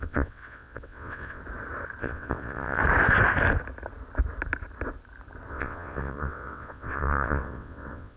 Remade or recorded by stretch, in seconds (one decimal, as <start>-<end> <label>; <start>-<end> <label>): 0.0-1.4 remade; 1.4-2.0 recorded; 2.0-2.8 remade; 2.8-5.5 recorded; 5.5-8.2 remade